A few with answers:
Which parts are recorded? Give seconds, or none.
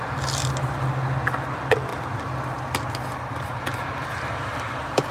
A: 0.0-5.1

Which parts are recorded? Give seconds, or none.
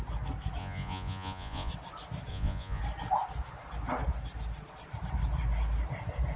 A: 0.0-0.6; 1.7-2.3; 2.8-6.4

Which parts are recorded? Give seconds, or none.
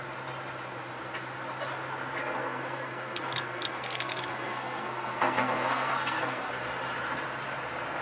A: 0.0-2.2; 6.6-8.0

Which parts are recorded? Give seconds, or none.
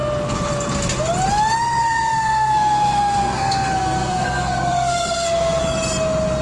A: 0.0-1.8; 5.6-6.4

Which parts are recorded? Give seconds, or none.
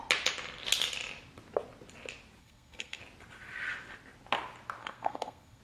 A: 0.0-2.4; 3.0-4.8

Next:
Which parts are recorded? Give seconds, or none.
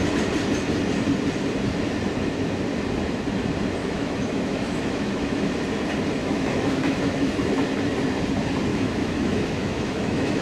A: 0.0-3.8; 5.5-6.2; 7.3-8.7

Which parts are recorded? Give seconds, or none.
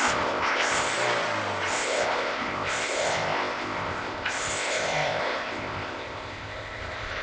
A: 0.9-1.7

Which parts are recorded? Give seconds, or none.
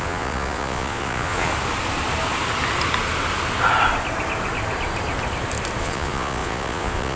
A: 1.5-5.8